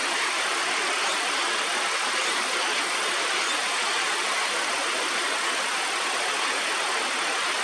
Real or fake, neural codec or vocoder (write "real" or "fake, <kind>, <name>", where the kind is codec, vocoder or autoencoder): real